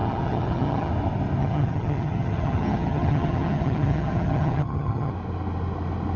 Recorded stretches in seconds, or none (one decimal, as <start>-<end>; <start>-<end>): 0.9-1.4; 5.1-6.2